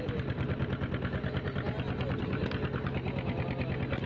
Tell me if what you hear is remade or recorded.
recorded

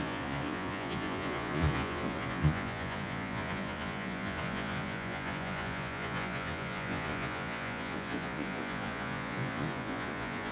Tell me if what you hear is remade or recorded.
remade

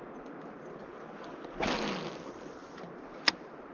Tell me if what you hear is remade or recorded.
recorded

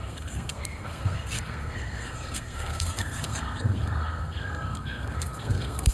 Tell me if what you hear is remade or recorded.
remade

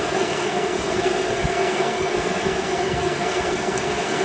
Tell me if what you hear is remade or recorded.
remade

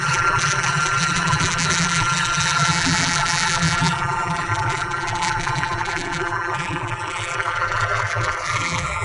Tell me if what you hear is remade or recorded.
remade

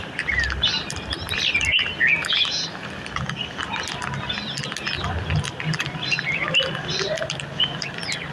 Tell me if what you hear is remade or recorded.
recorded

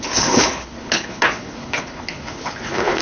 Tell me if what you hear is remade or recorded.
remade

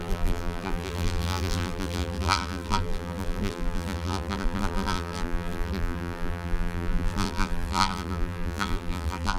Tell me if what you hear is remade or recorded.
remade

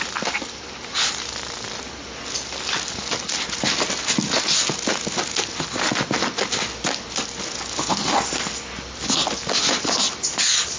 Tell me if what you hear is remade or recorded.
recorded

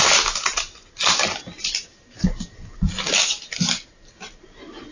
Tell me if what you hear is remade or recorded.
recorded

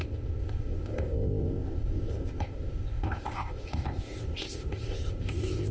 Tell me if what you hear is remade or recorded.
remade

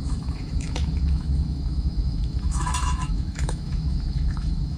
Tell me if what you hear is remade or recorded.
remade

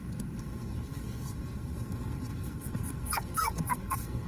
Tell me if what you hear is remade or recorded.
remade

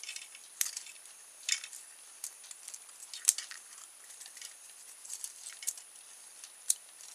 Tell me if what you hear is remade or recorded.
remade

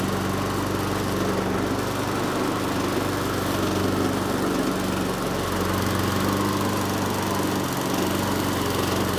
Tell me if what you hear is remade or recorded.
recorded